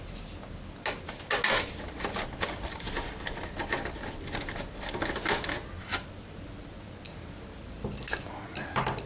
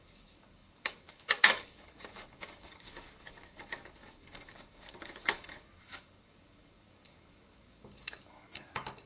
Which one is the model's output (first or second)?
second